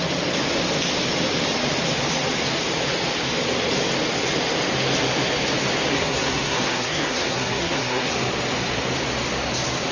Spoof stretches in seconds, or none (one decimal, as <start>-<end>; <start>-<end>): 5.9-8.1